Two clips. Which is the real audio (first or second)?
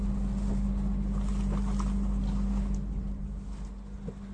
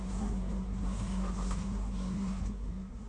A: first